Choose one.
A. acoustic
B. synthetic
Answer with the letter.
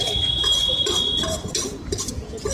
A